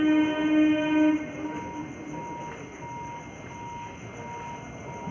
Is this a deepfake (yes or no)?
no